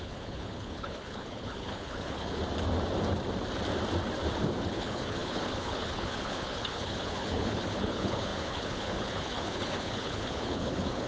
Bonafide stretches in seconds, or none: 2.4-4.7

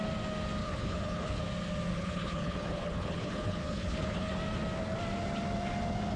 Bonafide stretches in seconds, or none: 0.0-0.6; 1.4-1.9; 4.3-6.2

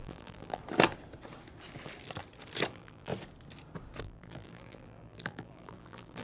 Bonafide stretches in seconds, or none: 0.6-2.7; 3.1-4.0

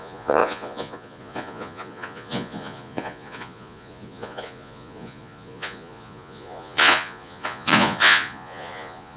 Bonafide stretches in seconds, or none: none

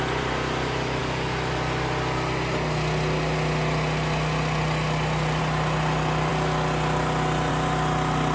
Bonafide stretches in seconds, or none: 0.0-8.3